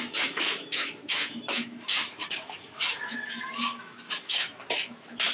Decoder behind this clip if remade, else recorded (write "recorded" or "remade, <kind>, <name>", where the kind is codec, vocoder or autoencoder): remade, autoencoder, DAC-VAE